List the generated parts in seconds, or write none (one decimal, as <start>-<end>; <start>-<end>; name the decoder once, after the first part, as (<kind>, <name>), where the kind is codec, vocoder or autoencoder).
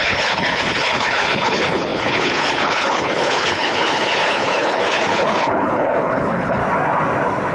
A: 0.0-6.6 (codec, HILCodec)